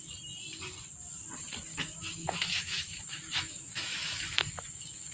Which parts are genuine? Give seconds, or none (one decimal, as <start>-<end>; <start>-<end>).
0.0-1.7